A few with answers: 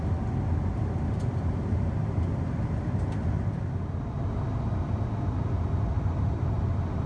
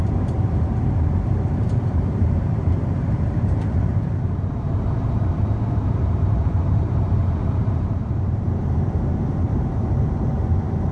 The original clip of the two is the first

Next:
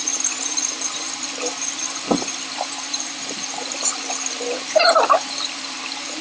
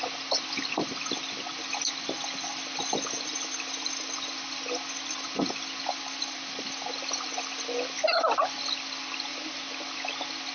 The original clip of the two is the second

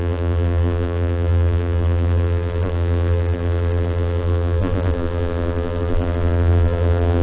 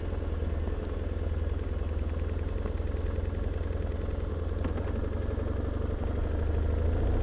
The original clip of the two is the second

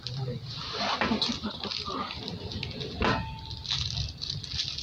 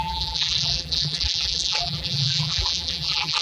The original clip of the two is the first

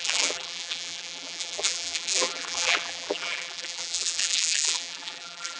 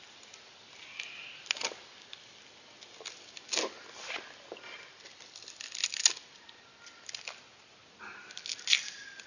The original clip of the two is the second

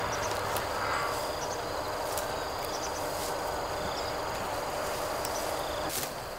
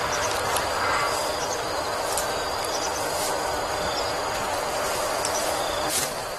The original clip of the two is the first